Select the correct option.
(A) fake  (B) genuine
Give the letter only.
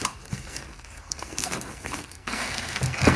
A